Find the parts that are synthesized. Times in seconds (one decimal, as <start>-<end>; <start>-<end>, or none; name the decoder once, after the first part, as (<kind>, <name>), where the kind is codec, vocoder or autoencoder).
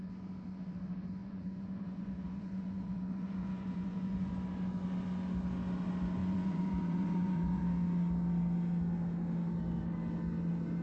1.2-4.3 (vocoder, Vocos); 6.2-7.6